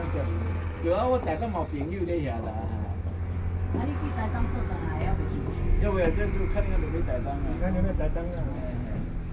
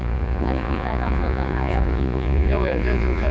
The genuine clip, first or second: first